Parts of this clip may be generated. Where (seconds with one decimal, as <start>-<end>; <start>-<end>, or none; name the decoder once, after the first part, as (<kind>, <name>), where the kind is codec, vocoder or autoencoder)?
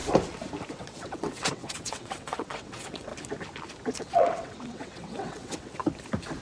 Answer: 0.7-3.1 (vocoder, WaveNeXt); 4.0-5.8